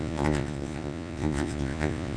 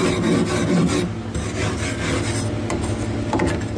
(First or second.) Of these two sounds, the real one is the second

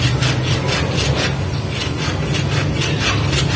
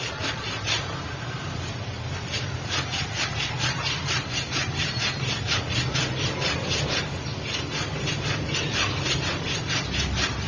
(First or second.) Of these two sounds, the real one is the first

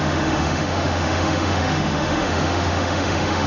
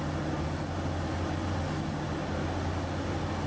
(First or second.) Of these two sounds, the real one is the second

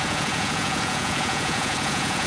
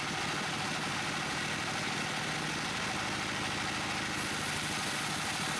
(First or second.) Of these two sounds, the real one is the second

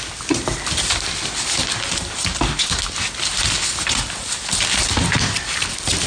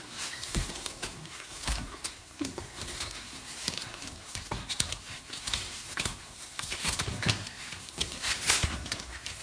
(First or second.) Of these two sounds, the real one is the first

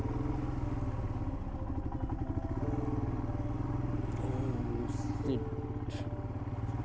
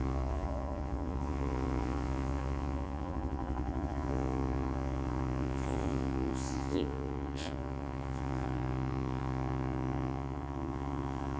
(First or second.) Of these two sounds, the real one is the first